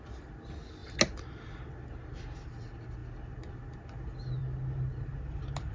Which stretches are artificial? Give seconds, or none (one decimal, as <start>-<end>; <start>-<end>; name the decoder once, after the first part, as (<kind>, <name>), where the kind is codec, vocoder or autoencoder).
none